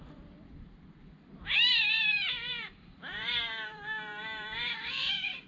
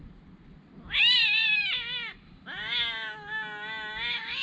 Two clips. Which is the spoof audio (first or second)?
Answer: first